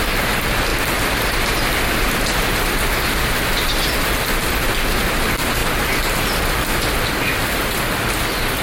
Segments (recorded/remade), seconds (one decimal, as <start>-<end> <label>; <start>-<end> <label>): 0.0-8.6 recorded